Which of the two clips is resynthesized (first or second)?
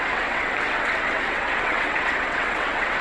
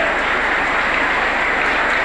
first